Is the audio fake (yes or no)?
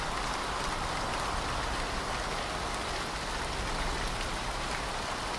no